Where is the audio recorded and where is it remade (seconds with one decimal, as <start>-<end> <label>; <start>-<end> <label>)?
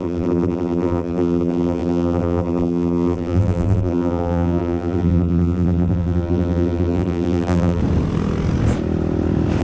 0.0-7.8 remade; 7.8-9.6 recorded